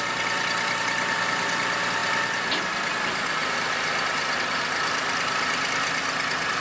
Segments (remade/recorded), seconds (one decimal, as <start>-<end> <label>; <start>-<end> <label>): 0.0-6.6 recorded